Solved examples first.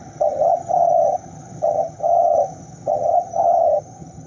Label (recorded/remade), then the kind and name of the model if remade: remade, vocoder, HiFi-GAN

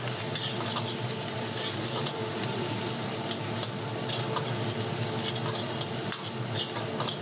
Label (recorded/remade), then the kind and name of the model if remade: recorded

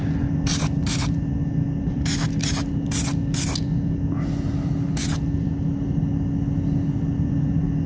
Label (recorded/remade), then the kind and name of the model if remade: recorded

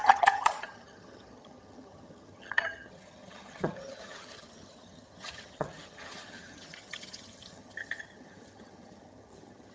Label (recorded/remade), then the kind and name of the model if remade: remade, vocoder, HiFi-GAN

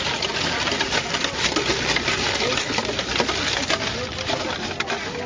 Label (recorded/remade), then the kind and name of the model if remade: recorded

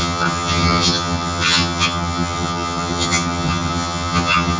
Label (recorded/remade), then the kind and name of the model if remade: remade, vocoder, HiFi-GAN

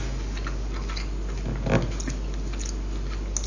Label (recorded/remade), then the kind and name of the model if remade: recorded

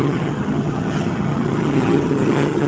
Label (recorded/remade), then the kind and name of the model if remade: remade, vocoder, HiFi-GAN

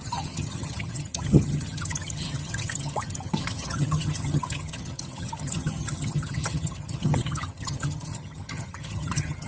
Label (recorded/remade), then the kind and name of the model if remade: remade, vocoder, HiFi-GAN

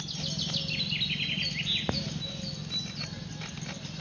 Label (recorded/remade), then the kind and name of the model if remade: recorded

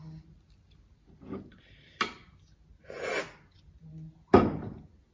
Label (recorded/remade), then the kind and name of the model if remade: recorded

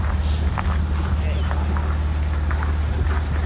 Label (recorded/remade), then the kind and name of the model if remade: recorded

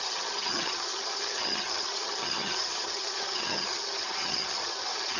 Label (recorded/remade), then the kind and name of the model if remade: remade, vocoder, HiFi-GAN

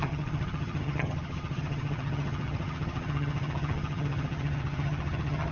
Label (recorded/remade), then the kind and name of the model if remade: remade, vocoder, HiFi-GAN